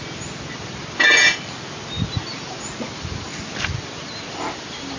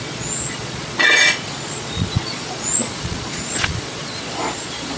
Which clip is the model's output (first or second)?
second